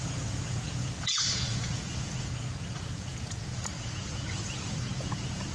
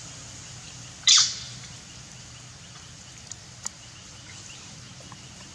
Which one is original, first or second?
second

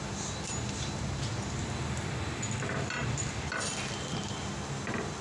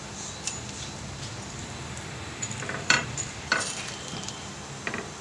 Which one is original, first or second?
first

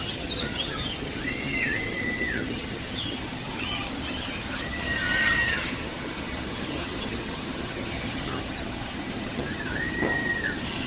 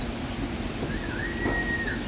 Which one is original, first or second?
second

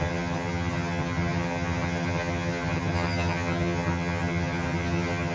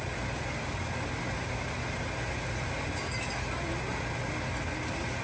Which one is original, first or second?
second